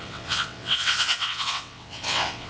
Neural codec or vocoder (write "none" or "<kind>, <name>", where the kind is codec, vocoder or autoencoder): vocoder, WaveNeXt